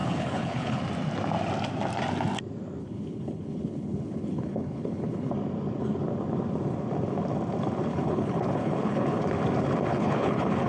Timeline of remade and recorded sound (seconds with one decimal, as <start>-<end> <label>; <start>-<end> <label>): 0.0-0.8 remade; 0.8-2.8 recorded; 2.8-5.3 remade; 5.3-7.9 recorded; 7.9-9.2 remade; 9.2-9.9 recorded; 9.9-10.7 remade